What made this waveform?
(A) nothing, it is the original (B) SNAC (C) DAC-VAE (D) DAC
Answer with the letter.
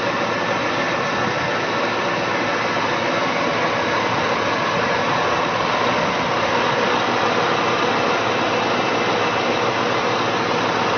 A